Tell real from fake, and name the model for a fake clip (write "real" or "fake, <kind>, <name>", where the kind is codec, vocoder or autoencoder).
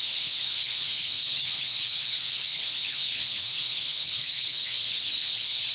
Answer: fake, codec, HILCodec